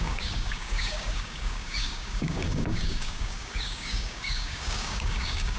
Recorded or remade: remade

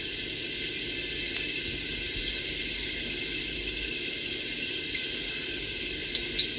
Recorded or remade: recorded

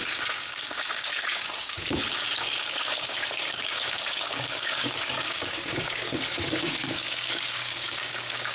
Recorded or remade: remade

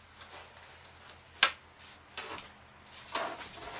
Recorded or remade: recorded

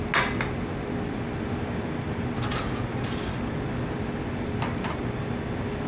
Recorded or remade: recorded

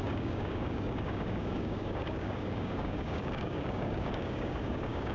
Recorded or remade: remade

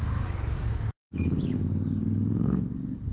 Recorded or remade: remade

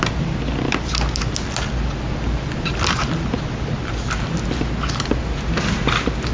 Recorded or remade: recorded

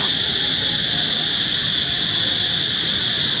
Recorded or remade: recorded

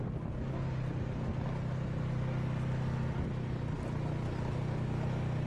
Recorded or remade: recorded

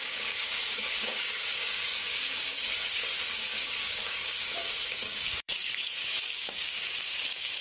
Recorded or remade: remade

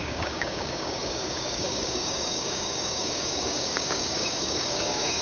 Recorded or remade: remade